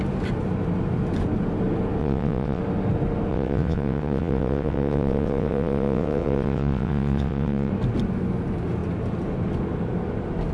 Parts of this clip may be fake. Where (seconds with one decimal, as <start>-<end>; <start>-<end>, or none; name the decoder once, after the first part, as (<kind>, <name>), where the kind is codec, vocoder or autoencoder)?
2.0-2.6 (vocoder, WaveNeXt); 3.3-7.7